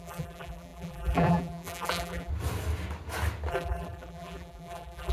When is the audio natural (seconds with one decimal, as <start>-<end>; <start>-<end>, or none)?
2.3-3.5